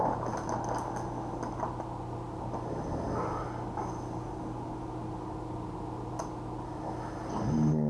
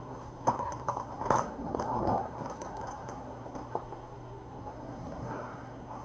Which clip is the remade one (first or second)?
second